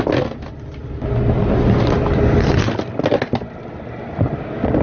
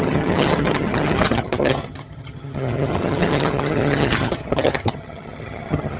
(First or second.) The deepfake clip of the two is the second